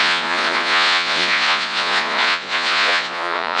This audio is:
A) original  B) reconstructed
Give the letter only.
B